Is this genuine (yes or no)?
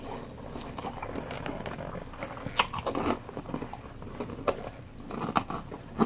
yes